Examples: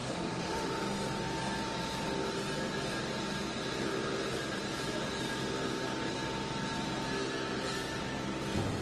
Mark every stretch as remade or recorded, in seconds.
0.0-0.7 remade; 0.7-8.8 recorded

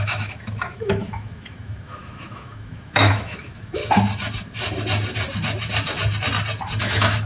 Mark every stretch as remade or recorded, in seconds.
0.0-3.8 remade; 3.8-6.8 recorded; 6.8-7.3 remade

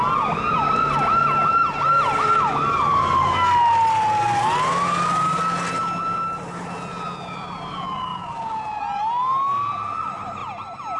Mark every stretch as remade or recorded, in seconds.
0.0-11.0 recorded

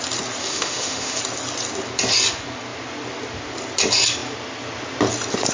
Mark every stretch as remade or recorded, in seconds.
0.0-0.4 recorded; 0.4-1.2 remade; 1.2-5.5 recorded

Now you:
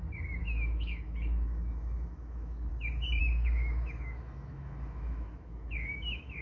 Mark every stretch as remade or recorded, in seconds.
0.0-0.4 recorded; 0.4-2.7 remade; 2.7-3.2 recorded; 3.2-6.4 remade

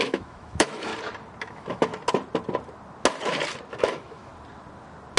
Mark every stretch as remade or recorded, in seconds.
0.0-0.9 remade; 0.9-1.4 recorded; 1.4-1.9 remade; 1.9-3.8 recorded; 3.8-4.3 remade; 4.3-5.2 recorded

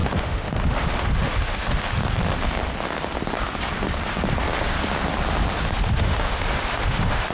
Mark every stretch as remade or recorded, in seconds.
0.0-2.0 remade; 2.0-5.8 recorded; 5.8-7.3 remade